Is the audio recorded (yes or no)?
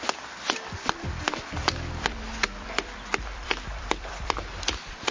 yes